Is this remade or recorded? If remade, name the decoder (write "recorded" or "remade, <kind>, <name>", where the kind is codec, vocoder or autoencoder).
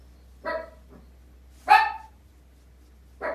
recorded